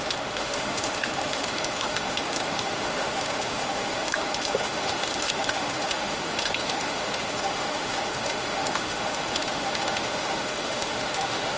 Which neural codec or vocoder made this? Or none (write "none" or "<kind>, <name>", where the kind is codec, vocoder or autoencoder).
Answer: autoencoder, DAC-VAE